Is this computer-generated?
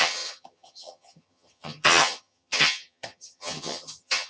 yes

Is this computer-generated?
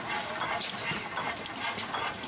no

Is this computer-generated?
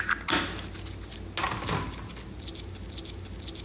no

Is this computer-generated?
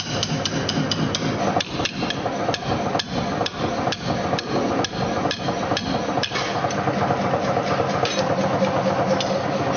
no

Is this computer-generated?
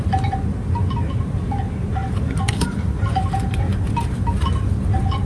yes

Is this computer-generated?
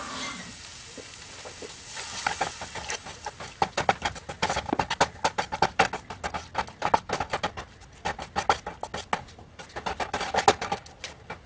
no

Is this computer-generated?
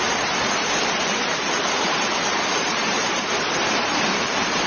yes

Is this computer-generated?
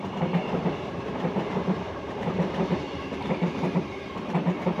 yes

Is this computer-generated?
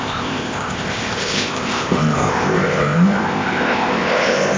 yes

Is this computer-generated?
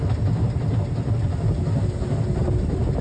no